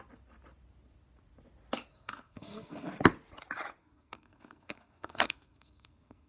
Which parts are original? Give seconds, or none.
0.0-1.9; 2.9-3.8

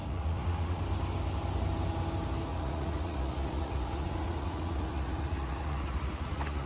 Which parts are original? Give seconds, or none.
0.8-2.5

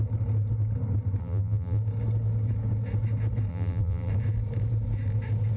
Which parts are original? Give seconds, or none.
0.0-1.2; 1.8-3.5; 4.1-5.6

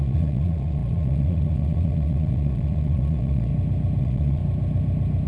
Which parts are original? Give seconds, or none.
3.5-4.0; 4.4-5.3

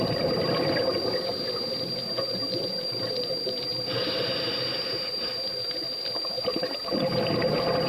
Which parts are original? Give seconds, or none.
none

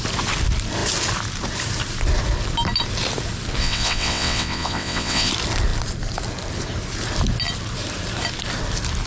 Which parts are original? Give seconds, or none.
0.0-3.6; 5.3-9.1

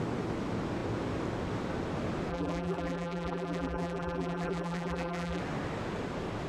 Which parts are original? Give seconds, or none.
0.0-2.3; 5.4-6.5